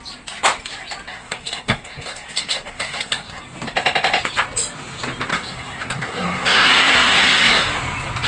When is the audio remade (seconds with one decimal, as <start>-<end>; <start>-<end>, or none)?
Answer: 1.1-3.4; 5.3-7.6